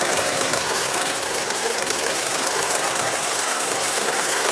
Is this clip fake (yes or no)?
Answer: yes